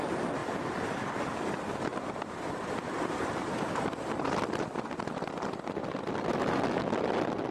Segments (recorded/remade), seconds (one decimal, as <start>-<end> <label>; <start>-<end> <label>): 0.0-1.9 recorded; 1.9-4.2 remade; 4.2-7.5 recorded